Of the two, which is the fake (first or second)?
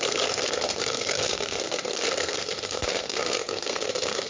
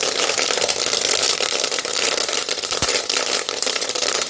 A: first